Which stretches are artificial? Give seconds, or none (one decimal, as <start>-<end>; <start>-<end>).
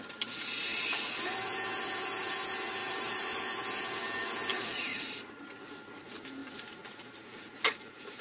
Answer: 2.8-3.4; 4.9-5.4